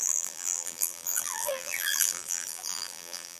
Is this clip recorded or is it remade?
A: remade